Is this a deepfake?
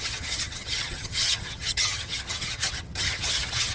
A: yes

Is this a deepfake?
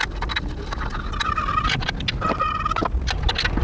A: no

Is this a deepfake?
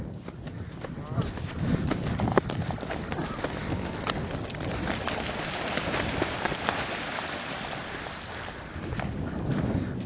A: no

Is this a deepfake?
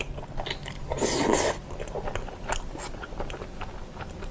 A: no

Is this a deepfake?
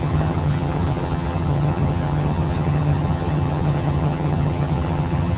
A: yes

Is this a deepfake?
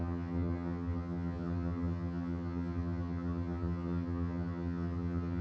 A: yes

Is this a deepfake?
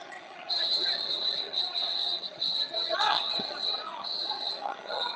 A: yes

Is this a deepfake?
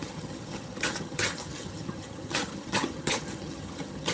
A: yes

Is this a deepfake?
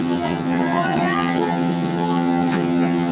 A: yes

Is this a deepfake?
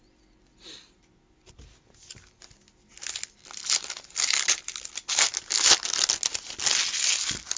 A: no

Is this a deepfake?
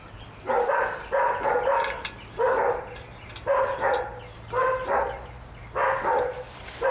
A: no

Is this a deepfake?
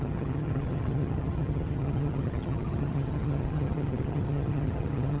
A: yes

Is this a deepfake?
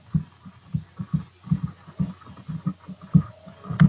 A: no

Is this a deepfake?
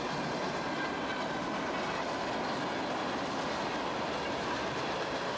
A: no